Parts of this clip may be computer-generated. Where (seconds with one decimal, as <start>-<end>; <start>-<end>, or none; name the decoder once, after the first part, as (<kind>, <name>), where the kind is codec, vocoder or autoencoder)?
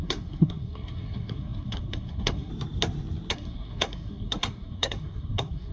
0.0-2.5 (codec, SNAC); 3.3-5.7